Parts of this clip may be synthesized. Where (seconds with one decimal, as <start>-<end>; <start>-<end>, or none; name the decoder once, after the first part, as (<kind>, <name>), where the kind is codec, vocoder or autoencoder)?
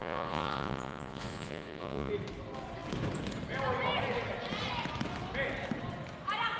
0.0-2.1 (vocoder, Vocos)